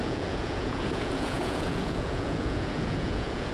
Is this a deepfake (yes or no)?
yes